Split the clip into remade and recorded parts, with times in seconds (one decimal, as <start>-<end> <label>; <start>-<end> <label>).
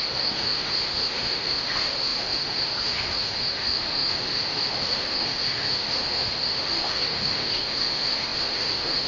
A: 0.0-9.1 remade